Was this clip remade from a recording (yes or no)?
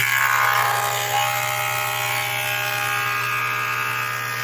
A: no